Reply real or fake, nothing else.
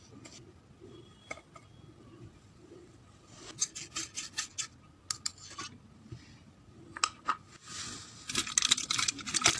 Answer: real